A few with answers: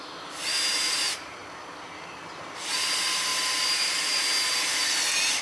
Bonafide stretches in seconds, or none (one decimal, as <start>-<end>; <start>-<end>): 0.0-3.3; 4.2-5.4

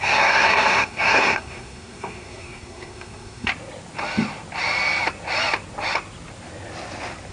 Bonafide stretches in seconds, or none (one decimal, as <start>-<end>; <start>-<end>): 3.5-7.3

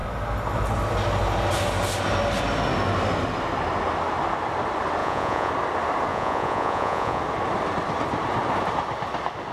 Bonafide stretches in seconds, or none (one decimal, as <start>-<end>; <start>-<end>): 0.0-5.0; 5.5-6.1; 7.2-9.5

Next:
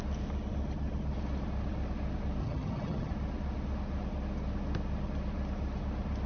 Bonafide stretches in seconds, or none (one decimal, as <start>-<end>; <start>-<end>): 0.0-2.4; 3.1-6.3

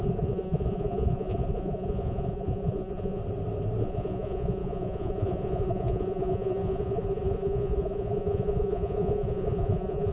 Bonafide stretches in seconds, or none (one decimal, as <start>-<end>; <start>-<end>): 3.2-3.8

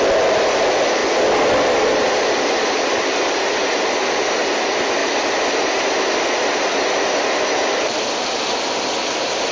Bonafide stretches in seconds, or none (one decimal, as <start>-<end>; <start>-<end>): 0.0-1.0; 3.1-6.7; 8.8-9.5

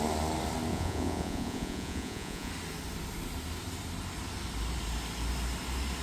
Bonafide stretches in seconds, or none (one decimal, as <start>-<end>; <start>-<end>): 0.0-0.7; 2.5-6.0